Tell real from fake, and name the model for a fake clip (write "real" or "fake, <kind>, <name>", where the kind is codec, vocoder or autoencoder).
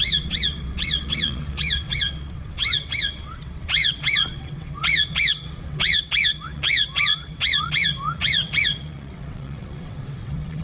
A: fake, vocoder, WaveNeXt